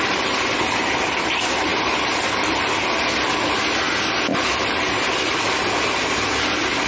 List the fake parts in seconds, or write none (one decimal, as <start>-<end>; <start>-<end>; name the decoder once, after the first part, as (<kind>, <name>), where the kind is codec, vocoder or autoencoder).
4.3-5.1 (vocoder, BigVGAN v2)